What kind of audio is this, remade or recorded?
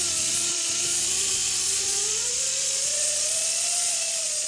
remade